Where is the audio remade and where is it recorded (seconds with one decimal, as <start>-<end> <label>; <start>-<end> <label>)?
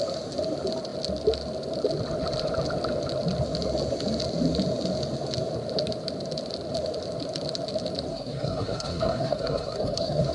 0.0-8.1 recorded; 8.1-10.3 remade